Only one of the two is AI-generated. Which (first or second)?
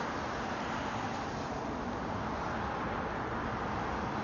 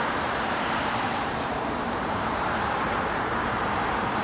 second